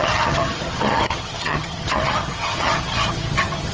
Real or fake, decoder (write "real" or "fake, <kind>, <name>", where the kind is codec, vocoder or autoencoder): fake, vocoder, HiFi-GAN